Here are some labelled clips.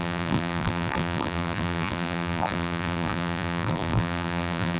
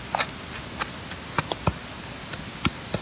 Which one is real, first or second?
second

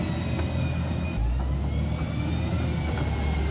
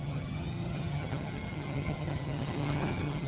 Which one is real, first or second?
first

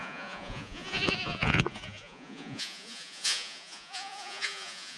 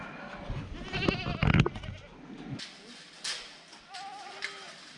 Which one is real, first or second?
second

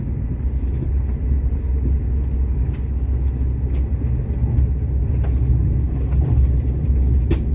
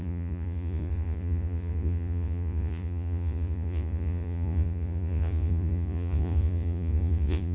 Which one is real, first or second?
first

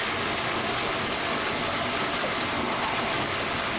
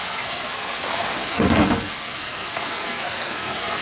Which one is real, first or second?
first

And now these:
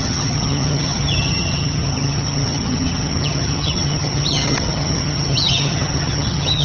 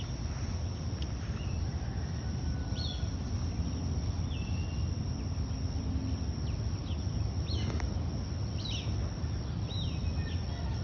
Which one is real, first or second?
second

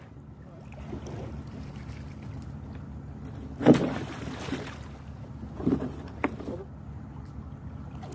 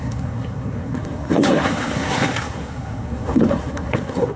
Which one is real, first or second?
first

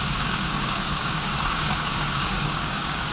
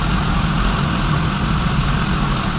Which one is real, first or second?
second